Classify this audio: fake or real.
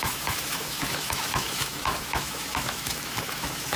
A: fake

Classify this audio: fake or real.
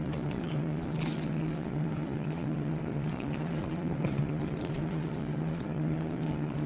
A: fake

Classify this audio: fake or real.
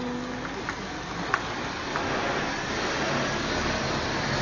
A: real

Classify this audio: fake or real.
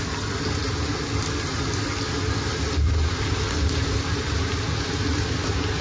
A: real